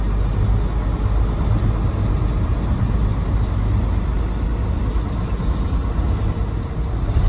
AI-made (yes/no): no